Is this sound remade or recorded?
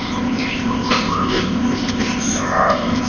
remade